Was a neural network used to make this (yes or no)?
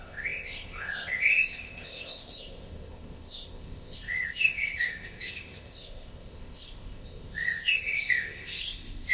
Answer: yes